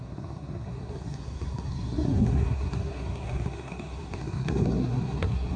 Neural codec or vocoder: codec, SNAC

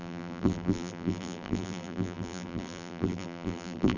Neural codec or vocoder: vocoder, BigVGAN v2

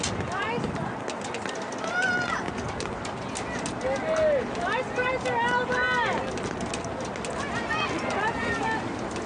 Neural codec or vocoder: none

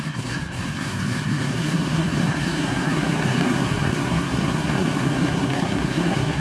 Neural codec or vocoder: codec, SNAC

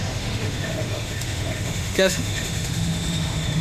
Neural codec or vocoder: autoencoder, DAC-VAE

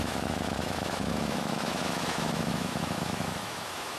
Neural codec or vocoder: autoencoder, DAC-VAE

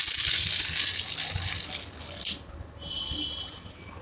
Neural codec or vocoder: none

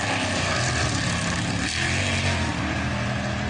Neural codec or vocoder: none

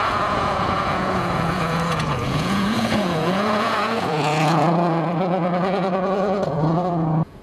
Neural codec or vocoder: vocoder, Vocos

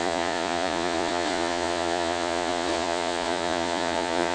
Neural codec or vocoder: vocoder, Vocos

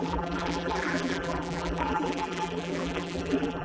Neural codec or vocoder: vocoder, BigVGAN v2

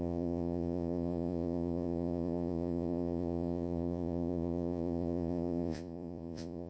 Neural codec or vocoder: vocoder, Vocos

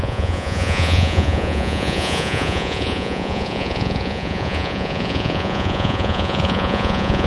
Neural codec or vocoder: vocoder, Vocos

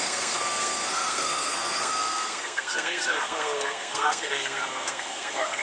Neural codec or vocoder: codec, SNAC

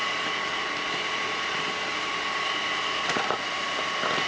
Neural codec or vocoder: none